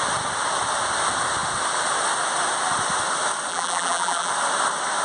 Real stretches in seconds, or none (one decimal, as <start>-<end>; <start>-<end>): 0.0-3.5; 4.3-5.0